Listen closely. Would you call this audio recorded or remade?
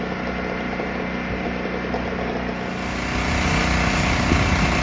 recorded